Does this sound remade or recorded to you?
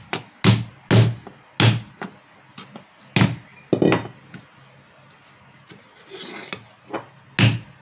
recorded